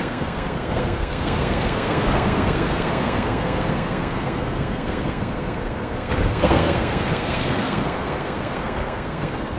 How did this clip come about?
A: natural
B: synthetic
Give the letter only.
B